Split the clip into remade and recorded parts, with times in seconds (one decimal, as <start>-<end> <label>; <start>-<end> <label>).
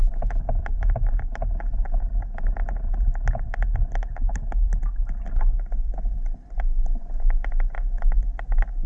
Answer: 0.0-8.9 recorded